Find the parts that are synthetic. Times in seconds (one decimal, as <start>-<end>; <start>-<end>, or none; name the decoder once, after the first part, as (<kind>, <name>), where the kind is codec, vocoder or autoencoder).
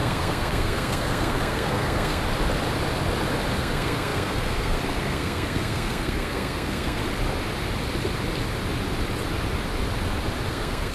0.0-2.2 (codec, SNAC); 3.6-7.0; 10.5-10.9